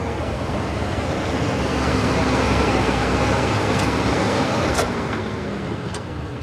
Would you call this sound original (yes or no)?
no